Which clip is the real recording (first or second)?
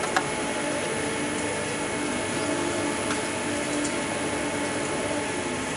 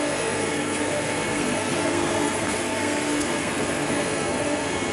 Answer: first